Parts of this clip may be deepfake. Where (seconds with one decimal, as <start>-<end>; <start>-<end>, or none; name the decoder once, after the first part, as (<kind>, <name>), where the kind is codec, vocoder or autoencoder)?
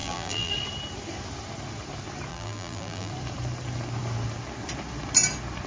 0.0-0.5 (vocoder, BigVGAN v2); 2.3-3.1